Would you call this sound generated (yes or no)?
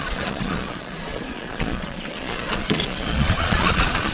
yes